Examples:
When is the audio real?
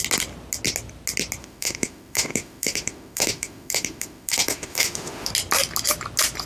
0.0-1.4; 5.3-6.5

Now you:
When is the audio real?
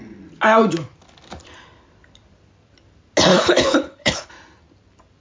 0.0-3.3; 4.3-5.2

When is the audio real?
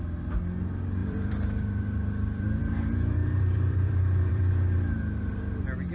0.0-1.0; 4.5-5.9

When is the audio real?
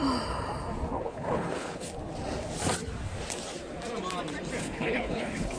0.0-1.0; 1.9-4.6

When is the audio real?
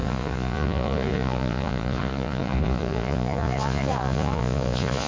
none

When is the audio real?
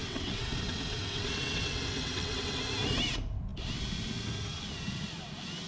2.6-5.7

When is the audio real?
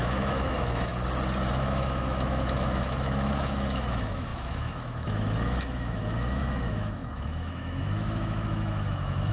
0.9-1.5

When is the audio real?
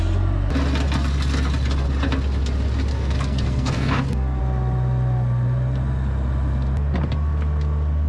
0.0-2.9; 4.4-8.1